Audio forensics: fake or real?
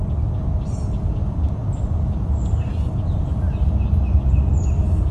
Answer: real